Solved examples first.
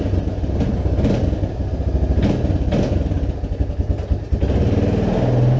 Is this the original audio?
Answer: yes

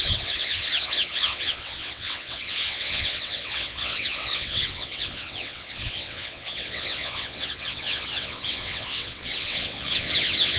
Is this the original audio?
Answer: no